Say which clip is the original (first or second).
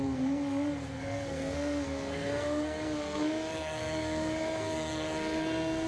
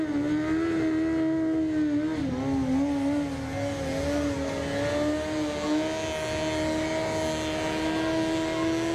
second